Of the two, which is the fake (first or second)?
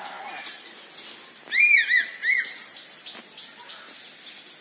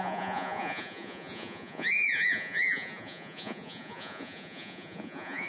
second